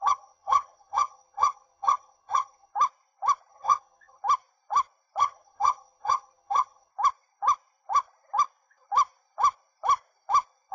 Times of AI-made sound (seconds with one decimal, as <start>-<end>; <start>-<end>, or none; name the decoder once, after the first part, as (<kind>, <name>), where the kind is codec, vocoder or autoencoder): 0.0-2.7 (vocoder, HiFi-GAN); 3.5-4.2; 5.2-6.9